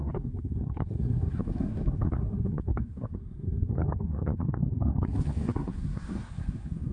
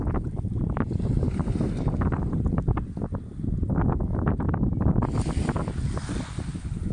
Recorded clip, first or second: second